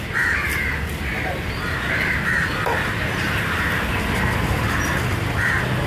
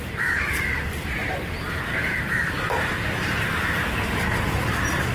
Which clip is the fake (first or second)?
second